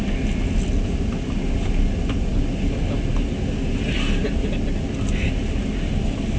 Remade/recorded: recorded